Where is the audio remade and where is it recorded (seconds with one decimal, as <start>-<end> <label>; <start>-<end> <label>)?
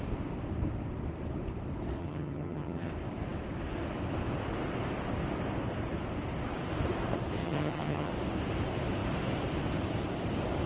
0.0-2.0 recorded; 2.0-2.9 remade; 2.9-7.4 recorded; 7.4-8.1 remade; 8.1-10.7 recorded